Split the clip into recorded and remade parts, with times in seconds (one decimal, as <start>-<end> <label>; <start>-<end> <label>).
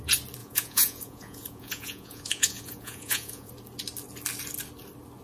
0.0-0.4 recorded; 0.4-3.5 remade; 3.5-5.2 recorded